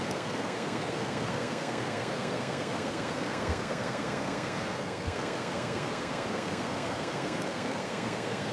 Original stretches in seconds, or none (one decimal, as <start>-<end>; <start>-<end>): none